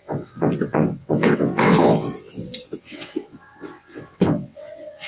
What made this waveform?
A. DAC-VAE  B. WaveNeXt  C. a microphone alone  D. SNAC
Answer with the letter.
B